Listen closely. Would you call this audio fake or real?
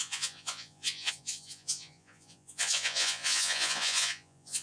fake